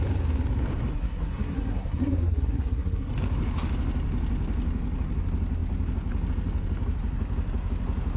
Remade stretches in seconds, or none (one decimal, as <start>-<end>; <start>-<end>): 0.9-3.1